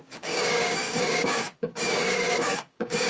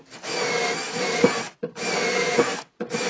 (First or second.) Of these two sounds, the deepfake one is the first